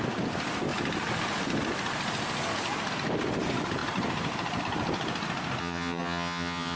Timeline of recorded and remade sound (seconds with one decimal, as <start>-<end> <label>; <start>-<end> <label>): 0.0-5.6 recorded; 5.6-6.8 remade